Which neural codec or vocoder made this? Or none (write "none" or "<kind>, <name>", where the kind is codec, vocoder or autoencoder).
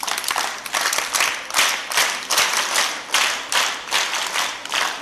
none